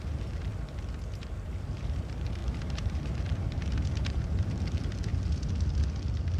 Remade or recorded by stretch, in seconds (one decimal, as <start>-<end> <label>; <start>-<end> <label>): 0.0-0.5 remade; 0.5-1.3 recorded; 1.3-5.1 remade; 5.1-6.4 recorded